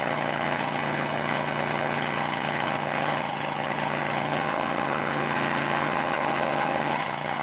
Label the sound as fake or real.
fake